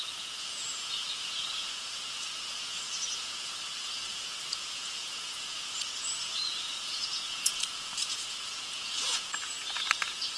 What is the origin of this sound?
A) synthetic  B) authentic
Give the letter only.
A